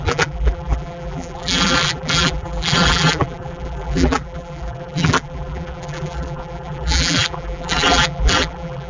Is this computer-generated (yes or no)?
yes